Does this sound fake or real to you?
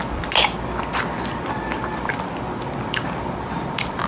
real